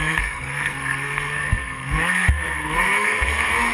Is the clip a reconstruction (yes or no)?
yes